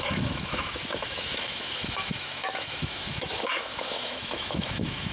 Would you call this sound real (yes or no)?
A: no